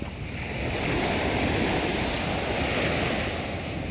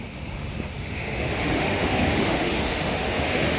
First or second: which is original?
first